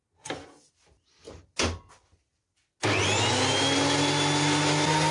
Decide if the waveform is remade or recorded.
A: recorded